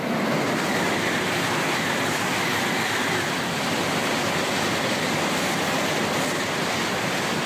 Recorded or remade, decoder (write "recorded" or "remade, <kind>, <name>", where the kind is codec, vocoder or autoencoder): recorded